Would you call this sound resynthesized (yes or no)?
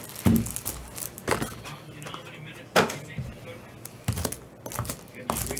no